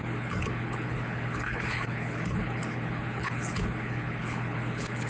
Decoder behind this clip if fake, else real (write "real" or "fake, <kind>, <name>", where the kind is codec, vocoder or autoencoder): fake, codec, HILCodec